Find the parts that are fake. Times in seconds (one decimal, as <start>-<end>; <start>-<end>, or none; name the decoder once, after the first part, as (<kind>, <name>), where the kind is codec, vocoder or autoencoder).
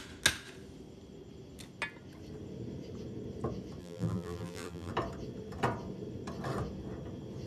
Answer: 3.8-4.9 (vocoder, BigVGAN v2)